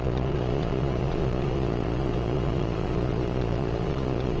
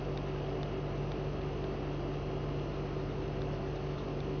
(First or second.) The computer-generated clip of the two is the first